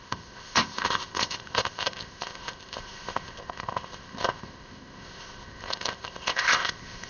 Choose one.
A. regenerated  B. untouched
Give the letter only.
A